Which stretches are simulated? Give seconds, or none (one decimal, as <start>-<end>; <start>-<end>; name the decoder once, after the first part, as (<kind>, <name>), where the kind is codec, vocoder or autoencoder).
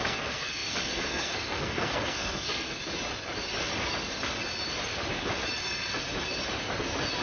0.0-2.8 (codec, SNAC)